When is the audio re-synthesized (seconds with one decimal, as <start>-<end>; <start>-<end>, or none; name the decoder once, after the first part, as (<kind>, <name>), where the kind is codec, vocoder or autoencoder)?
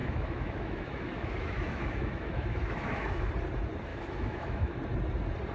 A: 0.0-3.3 (autoencoder, DAC-VAE); 3.9-4.8